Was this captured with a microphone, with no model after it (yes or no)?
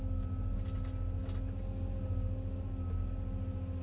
yes